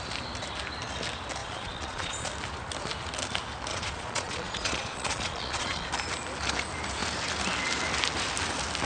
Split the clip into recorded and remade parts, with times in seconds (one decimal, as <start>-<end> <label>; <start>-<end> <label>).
0.0-1.4 recorded; 1.4-2.3 remade; 2.3-3.7 recorded; 3.7-5.9 remade; 5.9-8.8 recorded